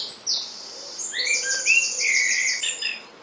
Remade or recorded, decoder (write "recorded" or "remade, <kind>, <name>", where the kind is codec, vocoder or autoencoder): recorded